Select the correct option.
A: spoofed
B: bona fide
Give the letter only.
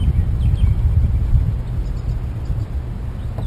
B